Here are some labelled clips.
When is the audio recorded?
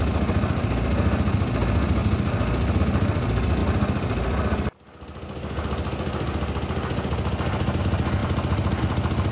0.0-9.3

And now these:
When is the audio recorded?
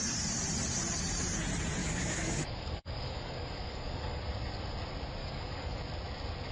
0.0-1.8; 4.2-5.2; 5.8-6.5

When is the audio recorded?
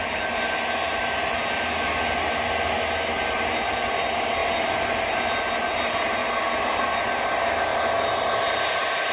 0.0-9.1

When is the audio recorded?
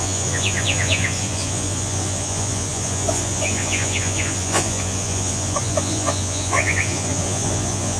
none